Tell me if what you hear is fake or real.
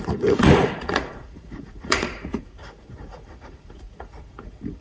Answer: fake